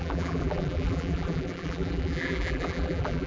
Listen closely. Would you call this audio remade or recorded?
remade